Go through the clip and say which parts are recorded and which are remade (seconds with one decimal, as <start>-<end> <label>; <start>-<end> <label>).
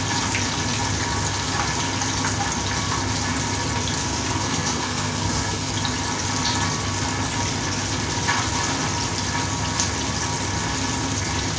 0.0-4.0 recorded; 4.0-5.7 remade; 5.7-11.6 recorded